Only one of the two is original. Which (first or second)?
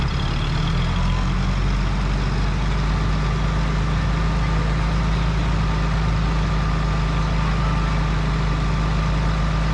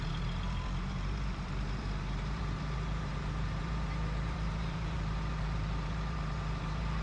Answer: first